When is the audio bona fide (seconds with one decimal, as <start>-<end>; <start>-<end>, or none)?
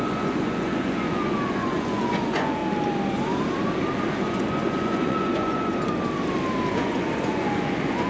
2.6-4.1; 5.7-6.7